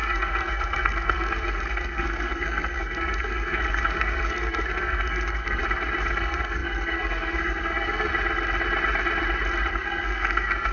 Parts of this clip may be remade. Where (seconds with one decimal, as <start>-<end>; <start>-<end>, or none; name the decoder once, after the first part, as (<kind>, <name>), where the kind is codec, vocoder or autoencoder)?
0.0-5.6 (codec, SNAC); 6.1-8.1; 9.7-10.7